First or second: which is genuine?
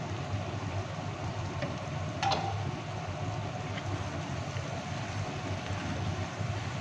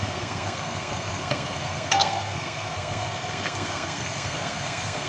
first